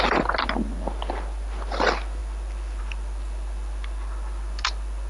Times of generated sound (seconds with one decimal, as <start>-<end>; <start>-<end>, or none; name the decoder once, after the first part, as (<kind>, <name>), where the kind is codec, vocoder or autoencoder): none